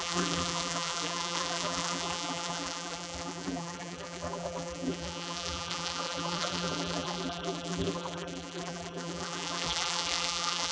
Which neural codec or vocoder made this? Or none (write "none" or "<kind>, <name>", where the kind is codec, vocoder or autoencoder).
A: vocoder, BigVGAN v2